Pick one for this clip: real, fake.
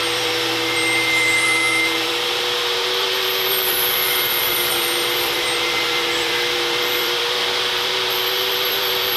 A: fake